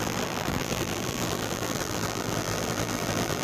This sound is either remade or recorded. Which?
remade